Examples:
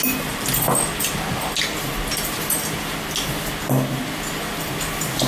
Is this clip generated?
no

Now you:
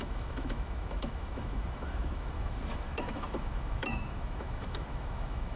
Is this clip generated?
yes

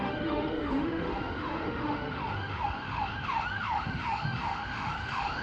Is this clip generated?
yes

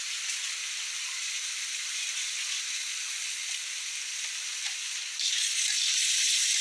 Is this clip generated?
no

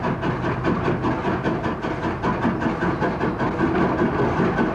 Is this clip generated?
no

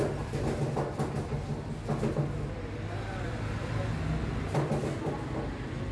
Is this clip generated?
no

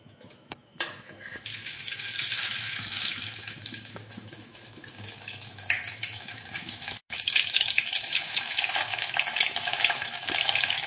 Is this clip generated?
yes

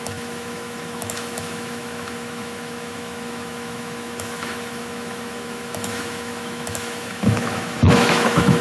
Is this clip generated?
yes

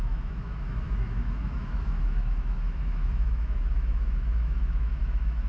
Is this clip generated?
yes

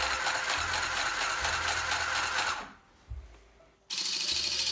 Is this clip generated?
no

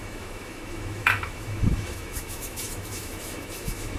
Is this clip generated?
yes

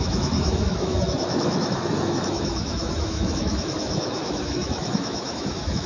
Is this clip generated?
yes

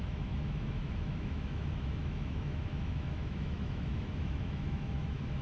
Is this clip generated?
yes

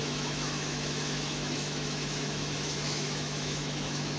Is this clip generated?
yes